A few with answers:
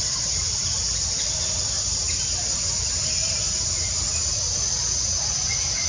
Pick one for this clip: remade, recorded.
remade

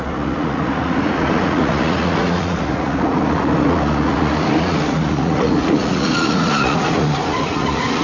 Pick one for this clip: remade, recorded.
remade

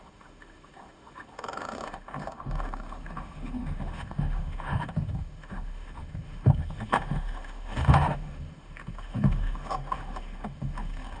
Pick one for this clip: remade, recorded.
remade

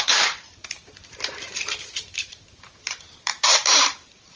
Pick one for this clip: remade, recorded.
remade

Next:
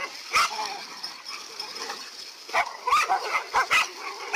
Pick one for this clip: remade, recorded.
recorded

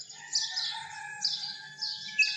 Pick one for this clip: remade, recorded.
recorded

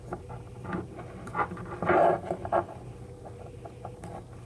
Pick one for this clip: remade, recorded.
recorded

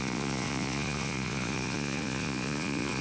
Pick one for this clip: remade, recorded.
remade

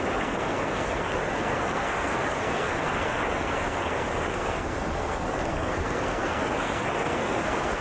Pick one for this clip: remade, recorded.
remade